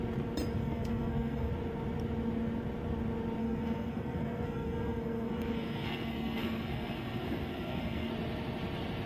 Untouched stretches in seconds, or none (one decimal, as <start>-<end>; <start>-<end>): 0.0-0.6; 1.5-3.4; 8.1-9.1